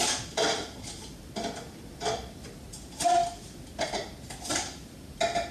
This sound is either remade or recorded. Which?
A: recorded